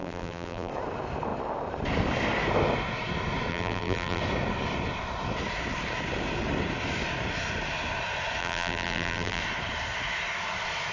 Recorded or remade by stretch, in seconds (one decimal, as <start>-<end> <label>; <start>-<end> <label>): 0.0-0.7 remade; 0.7-3.5 recorded; 3.5-4.2 remade; 4.2-8.4 recorded; 8.4-9.4 remade; 9.4-10.9 recorded